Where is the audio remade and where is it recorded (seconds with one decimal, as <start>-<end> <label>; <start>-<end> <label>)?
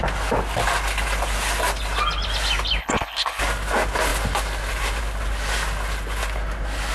0.0-2.8 recorded; 2.8-3.4 remade; 3.4-6.9 recorded